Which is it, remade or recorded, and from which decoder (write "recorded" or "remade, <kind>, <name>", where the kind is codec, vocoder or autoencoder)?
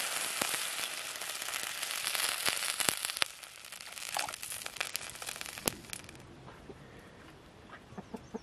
recorded